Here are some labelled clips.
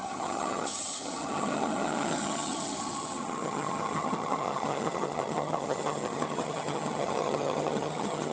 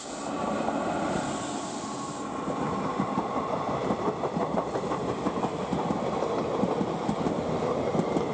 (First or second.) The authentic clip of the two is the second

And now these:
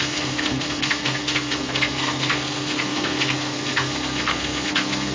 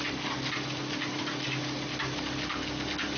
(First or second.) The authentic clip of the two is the second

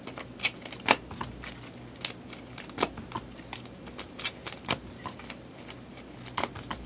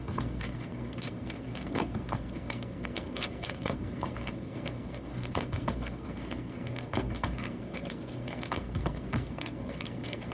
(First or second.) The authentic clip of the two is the first